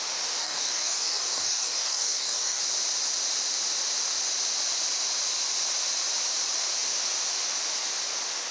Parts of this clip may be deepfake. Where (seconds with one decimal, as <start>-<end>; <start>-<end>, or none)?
0.4-2.6